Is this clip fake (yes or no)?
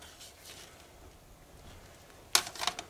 no